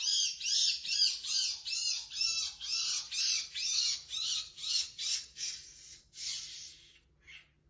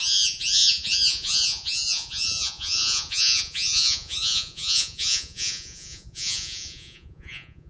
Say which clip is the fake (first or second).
second